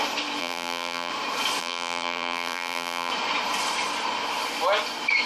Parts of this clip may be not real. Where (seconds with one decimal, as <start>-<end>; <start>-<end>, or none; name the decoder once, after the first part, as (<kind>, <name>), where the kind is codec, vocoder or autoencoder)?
0.4-1.1 (vocoder, BigVGAN v2); 1.6-3.1